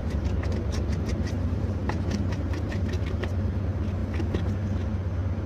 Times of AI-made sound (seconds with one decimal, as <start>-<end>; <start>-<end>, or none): 0.0-3.3